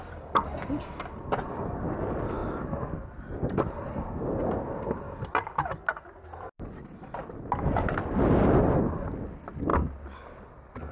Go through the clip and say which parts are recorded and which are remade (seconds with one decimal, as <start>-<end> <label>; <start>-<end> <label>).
0.0-10.9 recorded